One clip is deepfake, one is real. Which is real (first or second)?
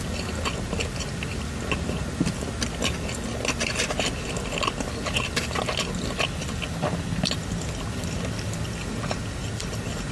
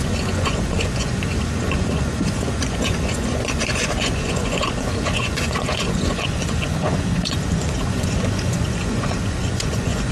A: first